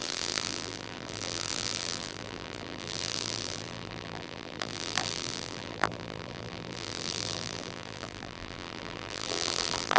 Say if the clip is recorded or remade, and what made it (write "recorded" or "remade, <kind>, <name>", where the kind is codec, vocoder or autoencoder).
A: remade, vocoder, BigVGAN v2